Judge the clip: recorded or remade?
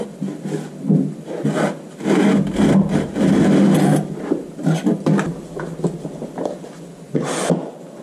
recorded